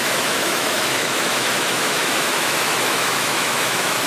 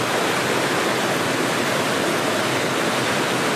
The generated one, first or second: first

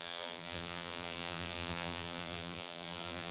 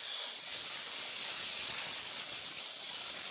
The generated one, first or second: first